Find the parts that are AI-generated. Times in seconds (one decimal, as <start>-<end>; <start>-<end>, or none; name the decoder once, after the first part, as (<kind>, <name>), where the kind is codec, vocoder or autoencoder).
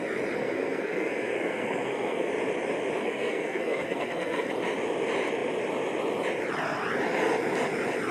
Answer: 0.4-2.3 (codec, SNAC); 3.0-4.5